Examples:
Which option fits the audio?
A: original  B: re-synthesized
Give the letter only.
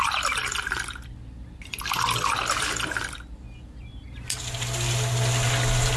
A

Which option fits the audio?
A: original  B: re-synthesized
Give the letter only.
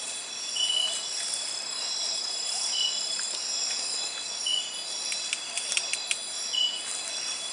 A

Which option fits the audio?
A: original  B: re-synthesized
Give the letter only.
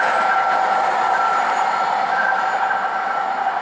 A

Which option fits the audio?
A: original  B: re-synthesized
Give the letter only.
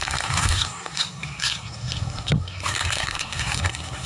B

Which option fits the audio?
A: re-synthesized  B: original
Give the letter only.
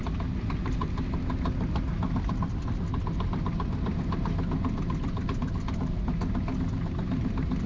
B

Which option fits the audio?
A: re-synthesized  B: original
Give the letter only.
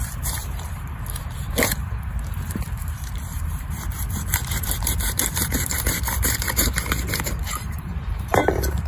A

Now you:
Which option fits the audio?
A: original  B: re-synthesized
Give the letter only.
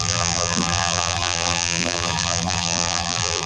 B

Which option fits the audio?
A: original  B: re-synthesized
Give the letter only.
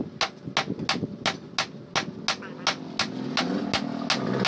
A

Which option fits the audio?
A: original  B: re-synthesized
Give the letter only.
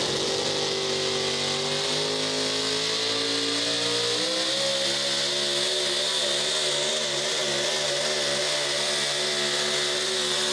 A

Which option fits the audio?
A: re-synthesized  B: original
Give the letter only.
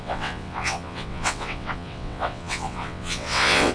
A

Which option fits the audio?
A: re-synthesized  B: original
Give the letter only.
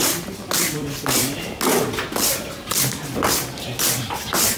B